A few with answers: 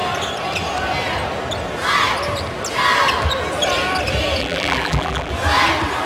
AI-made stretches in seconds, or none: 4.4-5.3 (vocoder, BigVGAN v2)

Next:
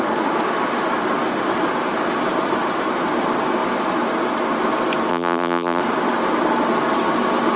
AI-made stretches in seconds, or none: 5.1-5.8 (vocoder, BigVGAN v2)